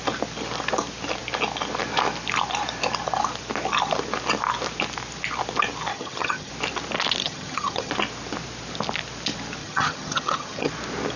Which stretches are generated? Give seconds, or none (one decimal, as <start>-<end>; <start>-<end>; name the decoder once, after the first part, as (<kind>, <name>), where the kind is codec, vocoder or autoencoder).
5.9-6.5 (vocoder, HiFi-GAN); 7.2-7.9; 9.6-10.7